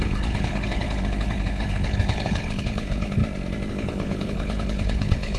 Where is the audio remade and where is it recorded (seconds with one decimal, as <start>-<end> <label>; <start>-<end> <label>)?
0.0-3.2 remade; 3.2-3.7 recorded; 3.7-5.4 remade